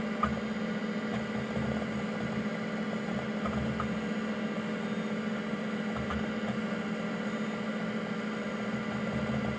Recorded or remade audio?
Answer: recorded